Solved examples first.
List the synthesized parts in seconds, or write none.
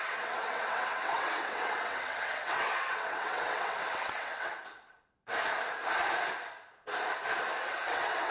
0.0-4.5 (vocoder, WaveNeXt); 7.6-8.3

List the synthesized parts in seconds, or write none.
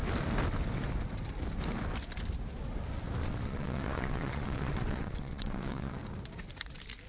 3.2-6.0 (vocoder, WaveNeXt)